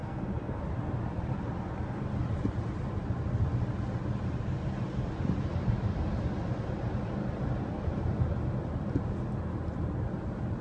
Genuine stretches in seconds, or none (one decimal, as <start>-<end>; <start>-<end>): 0.6-10.6